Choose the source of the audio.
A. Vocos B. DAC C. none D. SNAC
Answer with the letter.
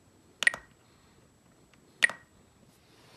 C